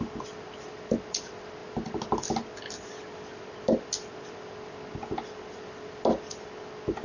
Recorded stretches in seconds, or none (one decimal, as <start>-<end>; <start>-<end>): 0.0-7.0